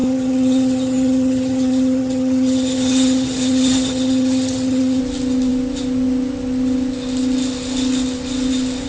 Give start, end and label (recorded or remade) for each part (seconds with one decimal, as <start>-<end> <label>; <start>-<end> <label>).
0.0-5.0 remade; 5.0-8.9 recorded